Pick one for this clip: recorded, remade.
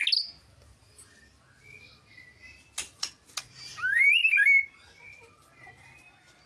recorded